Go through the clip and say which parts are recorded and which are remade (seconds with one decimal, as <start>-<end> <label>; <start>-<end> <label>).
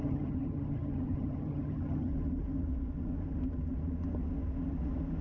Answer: 0.0-2.1 remade; 2.1-5.2 recorded